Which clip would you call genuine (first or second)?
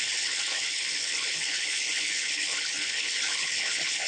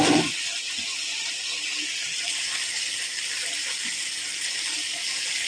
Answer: second